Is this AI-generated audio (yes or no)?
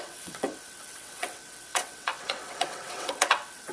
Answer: yes